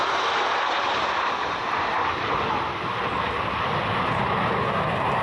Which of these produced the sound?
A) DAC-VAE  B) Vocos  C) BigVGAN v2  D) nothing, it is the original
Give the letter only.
D